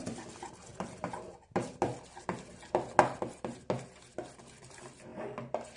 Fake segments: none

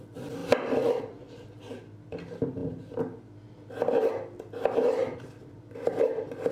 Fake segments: 0.4-1.1; 5.0-6.5